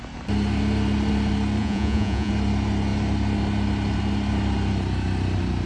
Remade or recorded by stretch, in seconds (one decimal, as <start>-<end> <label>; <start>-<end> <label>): 0.0-1.6 recorded; 1.6-2.3 remade; 2.3-5.7 recorded